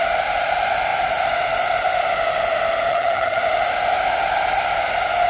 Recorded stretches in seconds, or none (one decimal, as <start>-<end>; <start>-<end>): 0.0-2.9; 3.4-5.3